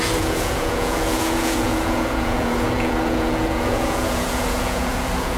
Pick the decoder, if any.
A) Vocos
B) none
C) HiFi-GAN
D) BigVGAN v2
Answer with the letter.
A